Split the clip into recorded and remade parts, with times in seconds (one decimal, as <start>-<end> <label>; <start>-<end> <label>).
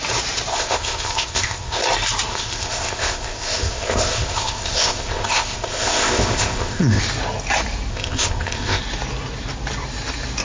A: 0.0-0.5 recorded; 0.5-1.8 remade; 1.8-2.3 recorded; 2.3-7.0 remade; 7.0-7.9 recorded; 7.9-8.8 remade; 8.8-10.4 recorded